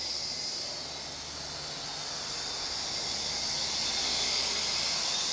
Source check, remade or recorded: recorded